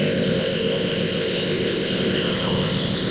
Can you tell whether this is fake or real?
fake